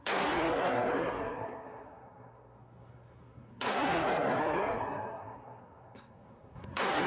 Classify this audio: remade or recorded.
remade